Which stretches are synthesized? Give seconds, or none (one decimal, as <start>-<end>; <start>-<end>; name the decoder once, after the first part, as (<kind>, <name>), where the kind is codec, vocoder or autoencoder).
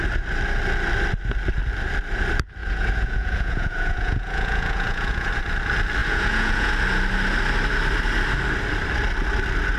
2.6-5.3 (vocoder, Vocos); 6.0-6.7